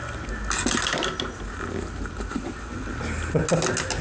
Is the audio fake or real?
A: real